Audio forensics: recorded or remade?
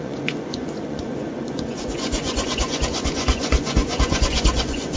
remade